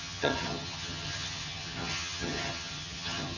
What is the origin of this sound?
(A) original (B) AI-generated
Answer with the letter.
B